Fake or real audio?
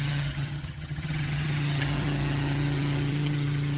fake